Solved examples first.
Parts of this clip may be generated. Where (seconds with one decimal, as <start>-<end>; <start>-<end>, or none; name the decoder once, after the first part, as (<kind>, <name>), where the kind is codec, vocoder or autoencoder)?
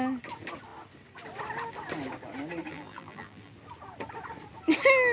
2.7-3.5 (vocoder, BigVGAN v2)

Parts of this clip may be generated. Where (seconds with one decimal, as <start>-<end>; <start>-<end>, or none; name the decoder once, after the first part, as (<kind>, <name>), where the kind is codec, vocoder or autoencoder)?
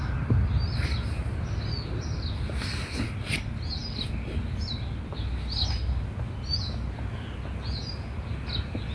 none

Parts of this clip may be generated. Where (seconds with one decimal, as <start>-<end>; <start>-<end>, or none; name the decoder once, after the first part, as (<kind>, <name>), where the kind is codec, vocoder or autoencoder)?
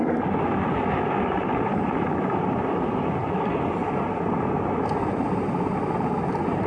none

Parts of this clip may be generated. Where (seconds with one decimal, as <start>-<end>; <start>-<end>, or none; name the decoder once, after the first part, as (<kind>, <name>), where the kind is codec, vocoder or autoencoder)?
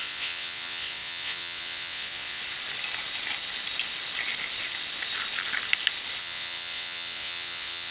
0.0-2.4 (vocoder, WaveNeXt); 6.2-7.9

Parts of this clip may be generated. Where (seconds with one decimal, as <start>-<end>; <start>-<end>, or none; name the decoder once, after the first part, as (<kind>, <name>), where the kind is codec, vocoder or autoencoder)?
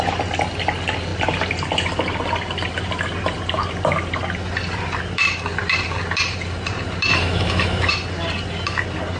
7.1-7.9 (autoencoder, DAC-VAE)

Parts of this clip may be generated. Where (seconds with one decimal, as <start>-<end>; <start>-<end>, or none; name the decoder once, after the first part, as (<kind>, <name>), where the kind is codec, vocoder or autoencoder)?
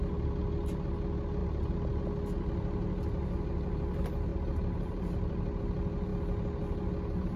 1.4-2.0 (vocoder, BigVGAN v2); 4.3-5.6